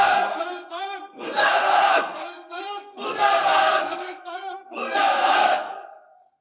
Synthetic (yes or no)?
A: yes